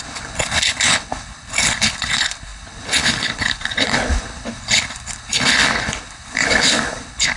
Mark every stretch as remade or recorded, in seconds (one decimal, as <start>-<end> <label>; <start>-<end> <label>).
0.0-7.4 remade